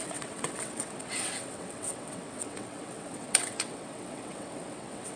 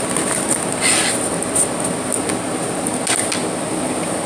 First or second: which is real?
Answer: second